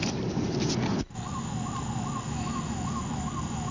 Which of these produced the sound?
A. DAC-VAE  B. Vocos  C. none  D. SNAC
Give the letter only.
C